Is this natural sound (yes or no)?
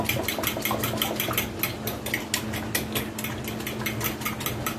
yes